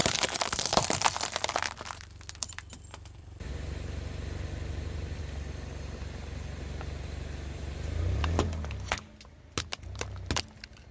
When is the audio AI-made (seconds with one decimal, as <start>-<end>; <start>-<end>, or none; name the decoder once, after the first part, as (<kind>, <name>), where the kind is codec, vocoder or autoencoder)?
0.0-3.5 (vocoder, BigVGAN v2)